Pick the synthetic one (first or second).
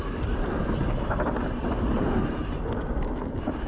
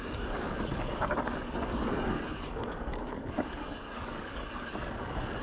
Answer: second